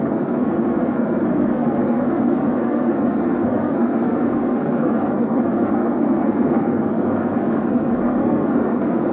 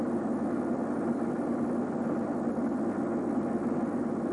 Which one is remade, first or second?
first